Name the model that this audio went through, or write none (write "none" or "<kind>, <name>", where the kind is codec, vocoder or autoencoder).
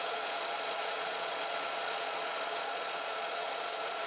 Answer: vocoder, Vocos